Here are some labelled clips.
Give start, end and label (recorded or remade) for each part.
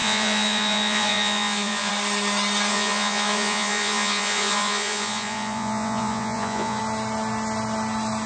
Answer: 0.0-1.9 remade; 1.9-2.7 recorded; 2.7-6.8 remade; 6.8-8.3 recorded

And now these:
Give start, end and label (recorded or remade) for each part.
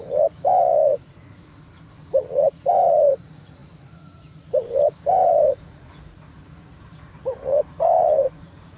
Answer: 0.0-8.8 remade